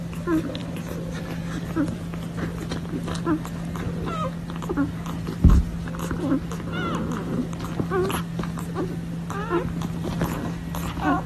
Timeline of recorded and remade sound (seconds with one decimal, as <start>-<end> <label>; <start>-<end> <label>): 0.0-11.3 recorded